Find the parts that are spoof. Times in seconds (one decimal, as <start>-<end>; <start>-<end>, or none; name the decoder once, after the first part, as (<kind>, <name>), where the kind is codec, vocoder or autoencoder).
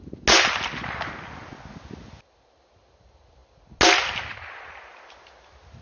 none